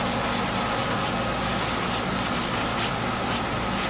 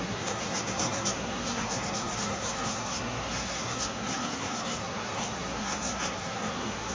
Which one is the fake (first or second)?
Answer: second